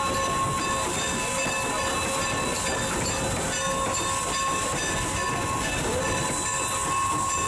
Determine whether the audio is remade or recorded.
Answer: recorded